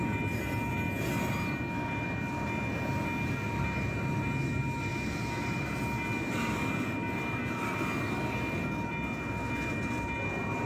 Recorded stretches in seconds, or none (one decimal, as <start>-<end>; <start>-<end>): 0.0-4.9; 5.8-10.7